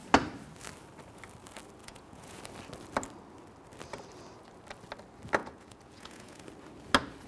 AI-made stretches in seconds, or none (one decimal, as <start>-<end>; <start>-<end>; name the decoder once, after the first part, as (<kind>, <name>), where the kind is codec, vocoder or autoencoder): 1.8-2.4 (vocoder, Vocos); 5.4-6.4